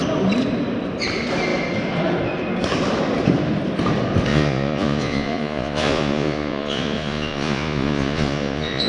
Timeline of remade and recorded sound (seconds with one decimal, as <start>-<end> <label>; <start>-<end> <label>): 0.0-4.3 recorded; 4.3-8.9 remade